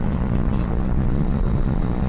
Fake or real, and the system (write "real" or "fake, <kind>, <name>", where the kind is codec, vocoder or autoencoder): fake, vocoder, Vocos